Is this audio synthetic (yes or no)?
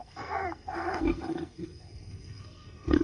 yes